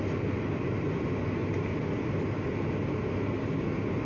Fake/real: real